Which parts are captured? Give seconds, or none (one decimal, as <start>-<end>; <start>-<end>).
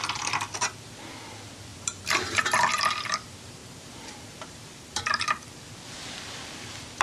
0.0-1.7; 2.4-3.6; 5.0-7.0